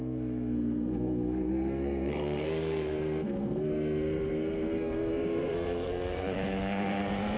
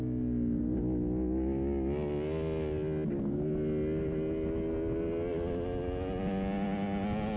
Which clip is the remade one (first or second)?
first